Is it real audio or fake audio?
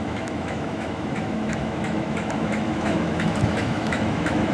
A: fake